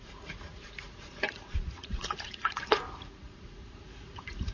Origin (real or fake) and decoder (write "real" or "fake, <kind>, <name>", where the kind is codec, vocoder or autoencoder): fake, vocoder, Vocos